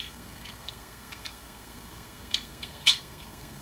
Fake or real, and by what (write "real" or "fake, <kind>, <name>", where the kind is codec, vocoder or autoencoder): fake, codec, SNAC